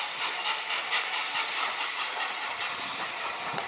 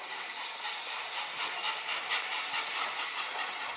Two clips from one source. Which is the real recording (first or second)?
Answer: second